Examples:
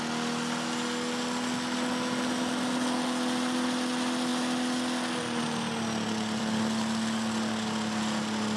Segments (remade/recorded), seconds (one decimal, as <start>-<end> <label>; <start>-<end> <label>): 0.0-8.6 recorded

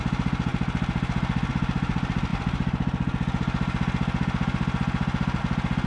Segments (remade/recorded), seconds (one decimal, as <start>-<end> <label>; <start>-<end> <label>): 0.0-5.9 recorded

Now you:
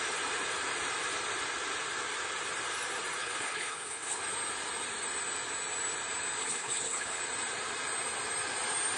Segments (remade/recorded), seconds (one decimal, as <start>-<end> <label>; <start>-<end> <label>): 0.0-3.2 recorded; 3.2-4.2 remade; 4.2-6.4 recorded; 6.4-7.2 remade; 7.2-9.0 recorded

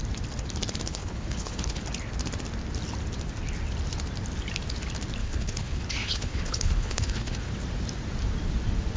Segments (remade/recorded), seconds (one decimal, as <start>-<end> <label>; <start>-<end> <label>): 0.0-0.9 recorded; 0.9-1.8 remade; 1.8-5.2 recorded; 5.2-7.5 remade; 7.5-9.0 recorded